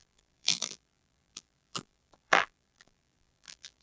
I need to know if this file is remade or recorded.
remade